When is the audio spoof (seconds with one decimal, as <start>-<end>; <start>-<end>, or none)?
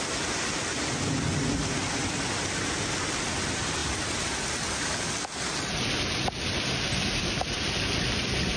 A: none